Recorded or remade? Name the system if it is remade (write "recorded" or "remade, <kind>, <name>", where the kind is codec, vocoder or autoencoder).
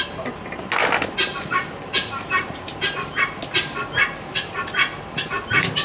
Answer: recorded